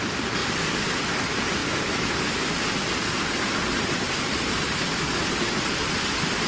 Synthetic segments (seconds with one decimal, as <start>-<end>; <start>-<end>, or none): none